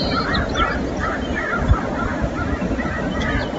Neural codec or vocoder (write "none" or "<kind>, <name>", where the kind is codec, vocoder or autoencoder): none